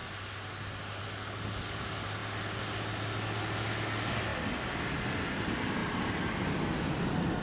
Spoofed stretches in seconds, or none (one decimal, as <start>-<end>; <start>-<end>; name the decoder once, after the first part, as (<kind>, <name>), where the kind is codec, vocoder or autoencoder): none